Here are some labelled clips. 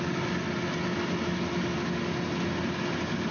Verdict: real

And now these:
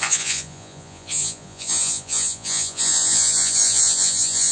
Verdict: fake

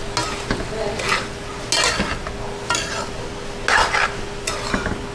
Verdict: real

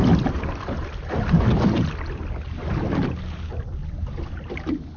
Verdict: real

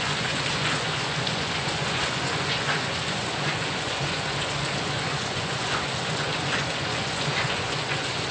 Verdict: fake